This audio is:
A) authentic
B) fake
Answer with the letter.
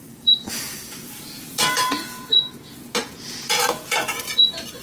B